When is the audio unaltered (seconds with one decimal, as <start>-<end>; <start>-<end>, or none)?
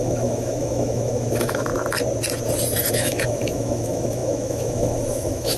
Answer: 1.7-2.9